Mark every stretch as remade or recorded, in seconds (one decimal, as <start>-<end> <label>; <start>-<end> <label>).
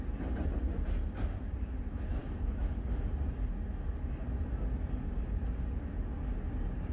0.0-6.9 recorded